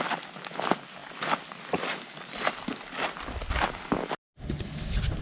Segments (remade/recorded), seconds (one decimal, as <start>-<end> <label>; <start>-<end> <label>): 0.0-5.2 recorded